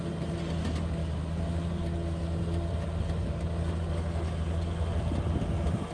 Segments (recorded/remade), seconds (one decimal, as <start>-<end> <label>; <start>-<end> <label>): 0.0-5.9 recorded

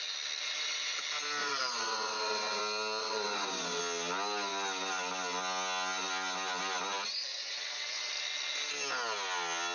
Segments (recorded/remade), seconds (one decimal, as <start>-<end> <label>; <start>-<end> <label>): 0.0-1.4 recorded; 1.4-2.6 remade; 2.6-3.0 recorded; 3.0-3.8 remade; 3.8-7.3 recorded; 7.3-8.1 remade; 8.1-9.7 recorded

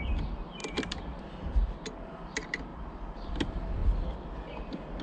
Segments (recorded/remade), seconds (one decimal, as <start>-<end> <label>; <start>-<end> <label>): 0.0-5.0 recorded